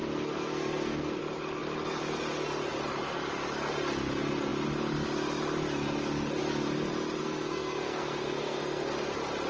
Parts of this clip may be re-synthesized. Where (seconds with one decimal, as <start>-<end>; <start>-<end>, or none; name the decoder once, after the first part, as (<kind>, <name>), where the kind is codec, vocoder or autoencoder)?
0.0-1.2 (codec, SNAC); 7.2-8.9